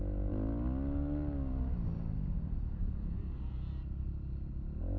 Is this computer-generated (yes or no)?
no